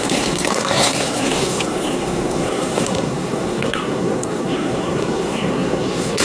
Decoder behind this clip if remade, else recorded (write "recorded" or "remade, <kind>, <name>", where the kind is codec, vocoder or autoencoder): remade, codec, SNAC